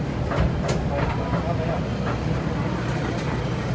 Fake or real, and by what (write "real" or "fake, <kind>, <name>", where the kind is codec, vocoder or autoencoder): real